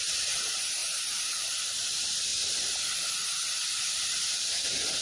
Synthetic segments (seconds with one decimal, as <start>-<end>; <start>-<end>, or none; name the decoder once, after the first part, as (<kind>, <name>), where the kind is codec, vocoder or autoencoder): 0.0-0.8 (vocoder, BigVGAN v2); 1.7-2.3; 3.9-5.0